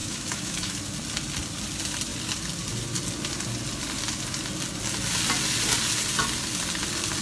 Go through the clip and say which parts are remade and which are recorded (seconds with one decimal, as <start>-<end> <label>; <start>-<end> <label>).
0.0-0.8 remade; 0.8-7.2 recorded